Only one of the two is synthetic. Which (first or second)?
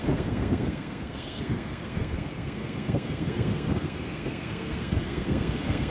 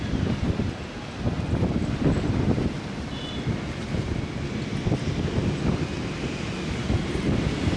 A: first